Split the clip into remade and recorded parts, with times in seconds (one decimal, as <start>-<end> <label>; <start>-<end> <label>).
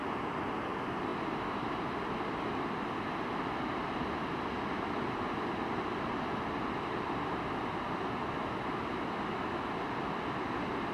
0.0-10.9 recorded